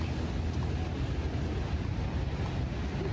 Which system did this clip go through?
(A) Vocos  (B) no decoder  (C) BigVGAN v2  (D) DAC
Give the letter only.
B